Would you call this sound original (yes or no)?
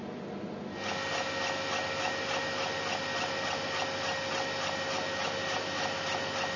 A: yes